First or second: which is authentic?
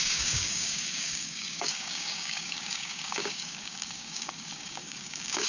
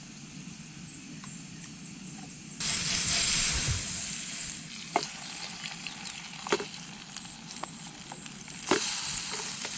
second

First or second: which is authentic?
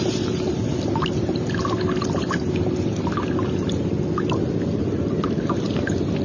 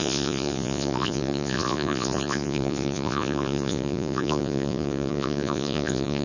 first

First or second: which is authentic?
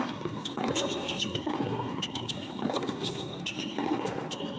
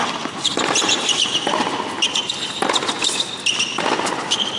second